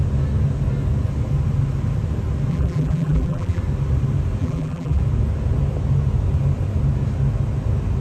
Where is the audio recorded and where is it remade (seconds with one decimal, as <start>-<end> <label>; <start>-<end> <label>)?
0.0-2.5 recorded; 2.5-3.6 remade; 3.6-4.4 recorded; 4.4-5.0 remade; 5.0-8.0 recorded